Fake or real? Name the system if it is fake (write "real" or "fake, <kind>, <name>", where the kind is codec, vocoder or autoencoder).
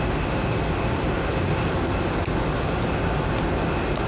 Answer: real